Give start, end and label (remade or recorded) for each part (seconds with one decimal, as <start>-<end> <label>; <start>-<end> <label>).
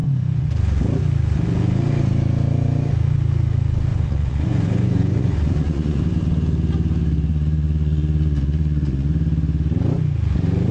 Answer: 0.0-0.5 remade; 0.5-3.9 recorded; 3.9-6.0 remade; 6.0-7.3 recorded; 7.3-9.1 remade; 9.1-10.7 recorded